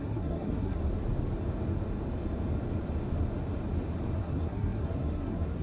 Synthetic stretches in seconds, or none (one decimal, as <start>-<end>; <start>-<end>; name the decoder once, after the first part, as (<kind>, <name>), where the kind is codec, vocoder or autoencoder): 0.0-0.8 (codec, SNAC); 4.2-5.6